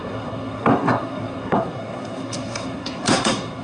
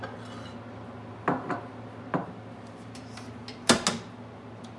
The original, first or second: second